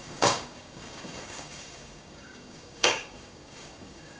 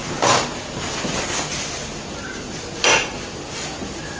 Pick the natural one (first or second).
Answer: second